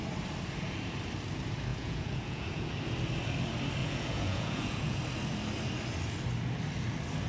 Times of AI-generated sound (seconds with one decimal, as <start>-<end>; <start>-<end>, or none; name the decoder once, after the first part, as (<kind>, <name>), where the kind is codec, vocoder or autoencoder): 1.7-2.7 (vocoder, Vocos); 3.8-5.0

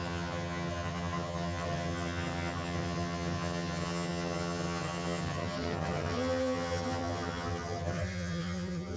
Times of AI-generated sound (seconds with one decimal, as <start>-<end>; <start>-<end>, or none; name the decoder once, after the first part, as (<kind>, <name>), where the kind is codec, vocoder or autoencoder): 0.0-9.0 (vocoder, HiFi-GAN)

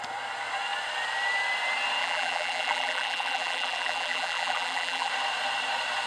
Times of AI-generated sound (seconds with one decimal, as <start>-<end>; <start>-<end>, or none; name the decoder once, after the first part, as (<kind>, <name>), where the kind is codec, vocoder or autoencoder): 2.0-5.1 (vocoder, BigVGAN v2)

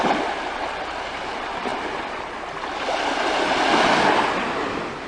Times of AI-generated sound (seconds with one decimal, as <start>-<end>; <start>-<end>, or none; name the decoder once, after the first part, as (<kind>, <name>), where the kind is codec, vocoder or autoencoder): none

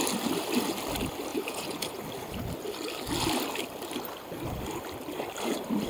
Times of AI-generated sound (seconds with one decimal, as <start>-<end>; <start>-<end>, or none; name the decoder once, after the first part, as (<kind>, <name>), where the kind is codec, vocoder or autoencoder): 1.3-2.0 (vocoder, Vocos)

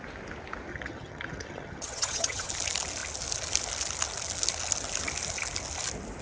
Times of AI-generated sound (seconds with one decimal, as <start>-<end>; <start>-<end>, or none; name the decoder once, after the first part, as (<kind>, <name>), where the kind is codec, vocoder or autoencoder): 0.7-2.5 (vocoder, HiFi-GAN)

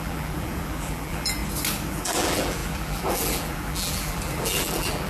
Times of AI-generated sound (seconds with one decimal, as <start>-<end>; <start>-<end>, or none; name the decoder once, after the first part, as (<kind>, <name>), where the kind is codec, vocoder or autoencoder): 0.0-1.4 (vocoder, BigVGAN v2); 1.9-5.1